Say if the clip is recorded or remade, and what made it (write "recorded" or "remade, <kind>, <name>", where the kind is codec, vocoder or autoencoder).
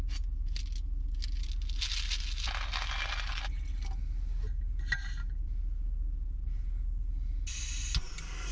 recorded